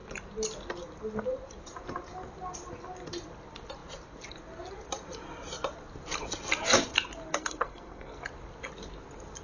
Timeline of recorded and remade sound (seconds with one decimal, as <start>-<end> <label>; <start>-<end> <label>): 0.0-7.3 recorded; 7.3-8.2 remade; 8.2-9.4 recorded